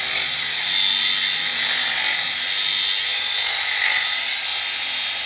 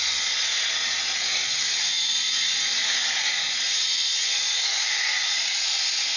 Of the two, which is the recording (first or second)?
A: first